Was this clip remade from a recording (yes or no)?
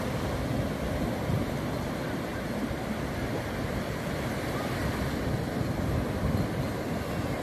yes